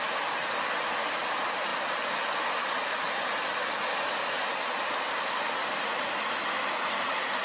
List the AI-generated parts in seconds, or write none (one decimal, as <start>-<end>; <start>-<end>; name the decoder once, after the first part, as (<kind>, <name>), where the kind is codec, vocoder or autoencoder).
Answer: none

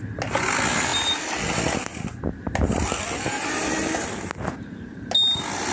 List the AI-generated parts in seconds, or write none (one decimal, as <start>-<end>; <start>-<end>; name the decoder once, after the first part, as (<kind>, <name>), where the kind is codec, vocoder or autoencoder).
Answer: none

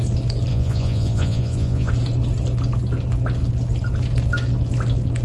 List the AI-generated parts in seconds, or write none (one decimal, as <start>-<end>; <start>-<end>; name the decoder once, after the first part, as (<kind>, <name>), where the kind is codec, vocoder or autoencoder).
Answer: 0.5-1.9 (vocoder, Vocos)

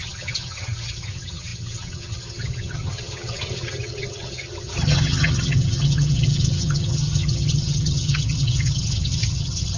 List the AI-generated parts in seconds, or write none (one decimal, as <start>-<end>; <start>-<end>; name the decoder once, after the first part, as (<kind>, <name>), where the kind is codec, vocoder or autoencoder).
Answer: 0.0-9.8 (vocoder, HiFi-GAN)

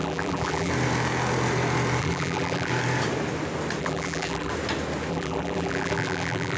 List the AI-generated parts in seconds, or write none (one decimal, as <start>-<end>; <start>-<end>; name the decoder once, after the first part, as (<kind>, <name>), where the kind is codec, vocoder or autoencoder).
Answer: 0.0-0.7 (vocoder, BigVGAN v2); 2.0-2.7; 3.8-4.5; 5.1-6.6